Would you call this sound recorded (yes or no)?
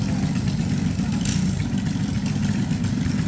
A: yes